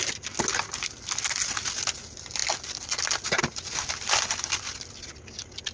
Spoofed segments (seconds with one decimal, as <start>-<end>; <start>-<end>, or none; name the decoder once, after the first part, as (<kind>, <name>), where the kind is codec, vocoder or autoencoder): none